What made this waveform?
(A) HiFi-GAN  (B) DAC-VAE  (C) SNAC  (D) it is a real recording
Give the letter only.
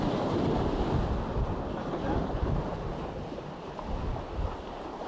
D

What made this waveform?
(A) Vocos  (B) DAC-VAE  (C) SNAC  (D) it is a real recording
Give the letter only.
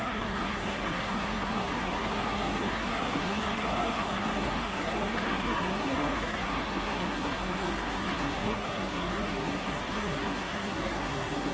C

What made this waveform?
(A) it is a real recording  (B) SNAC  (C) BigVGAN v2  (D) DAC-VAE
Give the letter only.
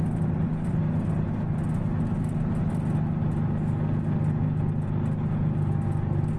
A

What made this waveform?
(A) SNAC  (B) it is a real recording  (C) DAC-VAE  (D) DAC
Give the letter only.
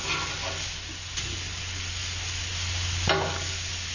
B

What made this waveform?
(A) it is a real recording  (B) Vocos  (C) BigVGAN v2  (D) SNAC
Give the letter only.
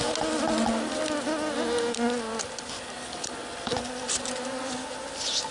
A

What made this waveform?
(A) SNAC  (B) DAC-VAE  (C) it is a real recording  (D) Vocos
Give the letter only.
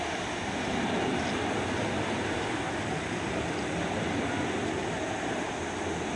C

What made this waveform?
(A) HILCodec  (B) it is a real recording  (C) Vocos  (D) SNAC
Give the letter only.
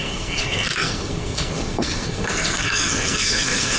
D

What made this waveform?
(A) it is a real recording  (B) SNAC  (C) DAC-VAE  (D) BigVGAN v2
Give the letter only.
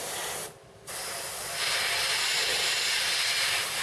A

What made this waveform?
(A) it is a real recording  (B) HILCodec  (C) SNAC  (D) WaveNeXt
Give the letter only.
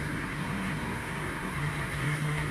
C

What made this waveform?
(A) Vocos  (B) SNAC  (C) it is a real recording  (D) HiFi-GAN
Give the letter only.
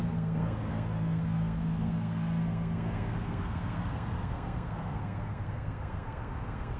B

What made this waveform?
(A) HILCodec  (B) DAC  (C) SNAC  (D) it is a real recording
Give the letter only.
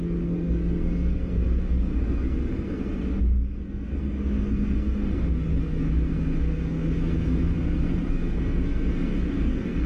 C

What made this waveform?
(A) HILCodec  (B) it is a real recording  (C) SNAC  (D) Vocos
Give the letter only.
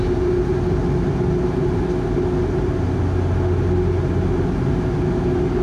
B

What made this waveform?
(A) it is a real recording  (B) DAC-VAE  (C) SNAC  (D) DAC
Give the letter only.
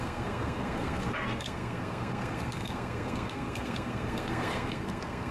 C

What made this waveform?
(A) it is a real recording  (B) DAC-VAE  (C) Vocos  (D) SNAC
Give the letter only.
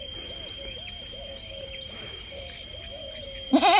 A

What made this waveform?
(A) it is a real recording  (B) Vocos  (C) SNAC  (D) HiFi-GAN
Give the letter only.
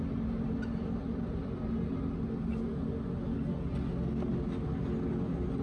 A